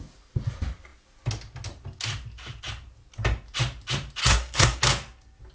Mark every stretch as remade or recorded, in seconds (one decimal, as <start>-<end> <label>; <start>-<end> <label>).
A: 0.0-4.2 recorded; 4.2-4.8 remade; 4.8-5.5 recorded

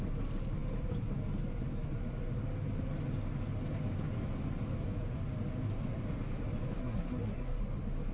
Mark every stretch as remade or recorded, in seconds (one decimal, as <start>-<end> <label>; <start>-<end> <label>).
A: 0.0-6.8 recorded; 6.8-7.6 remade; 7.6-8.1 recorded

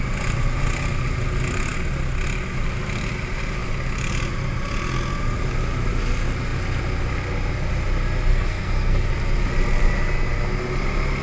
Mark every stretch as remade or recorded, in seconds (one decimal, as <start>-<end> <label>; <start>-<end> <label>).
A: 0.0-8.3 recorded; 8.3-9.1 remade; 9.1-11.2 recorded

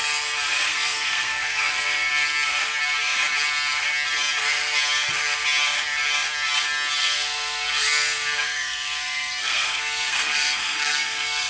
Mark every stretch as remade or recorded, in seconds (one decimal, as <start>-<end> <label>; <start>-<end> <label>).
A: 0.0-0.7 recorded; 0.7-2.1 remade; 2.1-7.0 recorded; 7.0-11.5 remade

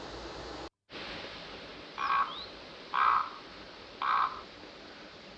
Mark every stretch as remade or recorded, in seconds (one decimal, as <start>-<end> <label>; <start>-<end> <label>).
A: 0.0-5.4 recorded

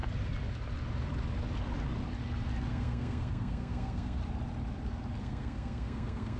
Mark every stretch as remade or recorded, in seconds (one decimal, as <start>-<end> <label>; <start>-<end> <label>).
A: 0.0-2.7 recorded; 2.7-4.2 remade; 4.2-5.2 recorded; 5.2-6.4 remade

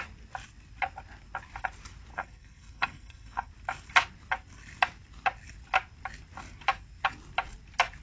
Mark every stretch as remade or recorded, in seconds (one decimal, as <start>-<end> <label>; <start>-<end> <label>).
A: 0.0-2.1 recorded; 2.1-3.5 remade; 3.5-8.0 recorded

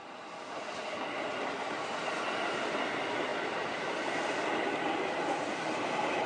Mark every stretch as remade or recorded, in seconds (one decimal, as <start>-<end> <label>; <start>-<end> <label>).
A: 0.0-6.3 recorded